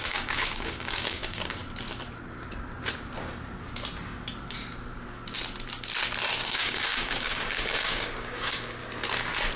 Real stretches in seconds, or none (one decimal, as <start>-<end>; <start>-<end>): 1.6-6.4; 8.8-9.6